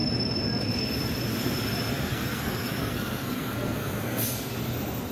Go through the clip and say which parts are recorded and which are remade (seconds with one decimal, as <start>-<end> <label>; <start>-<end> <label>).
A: 0.0-1.9 recorded; 1.9-4.5 remade; 4.5-5.1 recorded